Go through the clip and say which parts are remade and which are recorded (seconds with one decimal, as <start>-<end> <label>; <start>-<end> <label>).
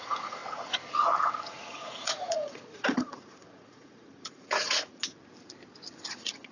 0.0-0.4 remade; 0.4-1.5 recorded; 1.5-5.0 remade; 5.0-6.1 recorded; 6.1-6.5 remade